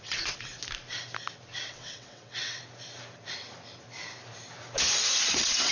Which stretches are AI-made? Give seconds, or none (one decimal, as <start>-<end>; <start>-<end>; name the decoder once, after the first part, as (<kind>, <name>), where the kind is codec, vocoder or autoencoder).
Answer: 0.0-0.5 (vocoder, WaveNeXt); 1.6-2.6; 5.3-5.7